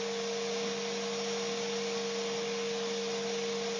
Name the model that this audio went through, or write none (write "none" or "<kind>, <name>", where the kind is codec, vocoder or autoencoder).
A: none